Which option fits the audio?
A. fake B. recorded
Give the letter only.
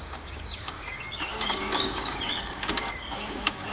A